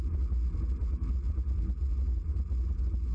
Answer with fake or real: real